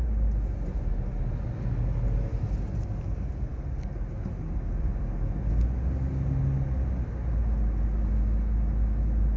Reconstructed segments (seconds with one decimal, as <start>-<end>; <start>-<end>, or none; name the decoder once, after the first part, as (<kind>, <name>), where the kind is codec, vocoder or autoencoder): none